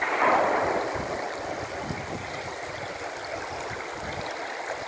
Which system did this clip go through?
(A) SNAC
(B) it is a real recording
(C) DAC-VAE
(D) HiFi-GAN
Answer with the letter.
B